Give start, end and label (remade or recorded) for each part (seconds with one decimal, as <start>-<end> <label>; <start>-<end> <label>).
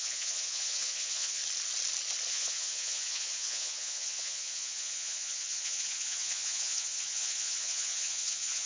0.0-1.4 remade; 1.4-2.3 recorded; 2.3-8.7 remade